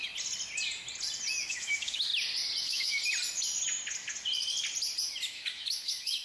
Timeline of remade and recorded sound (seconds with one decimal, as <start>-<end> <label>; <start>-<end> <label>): 0.0-1.3 recorded; 1.3-2.1 remade; 2.1-2.6 recorded; 2.6-3.0 remade; 3.0-5.2 recorded; 5.2-6.2 remade